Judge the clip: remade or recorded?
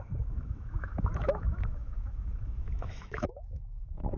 remade